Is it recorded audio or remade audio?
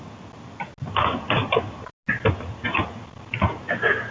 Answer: recorded